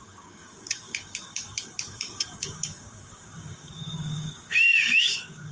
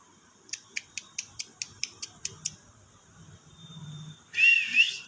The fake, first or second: first